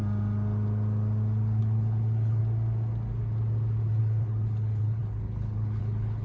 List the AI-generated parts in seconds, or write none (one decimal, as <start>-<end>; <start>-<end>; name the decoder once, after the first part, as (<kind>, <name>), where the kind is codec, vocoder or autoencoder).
1.6-2.4 (codec, HILCodec); 4.0-6.2